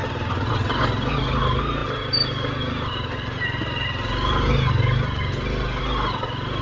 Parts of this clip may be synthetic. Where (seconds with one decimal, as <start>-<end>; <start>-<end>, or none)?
none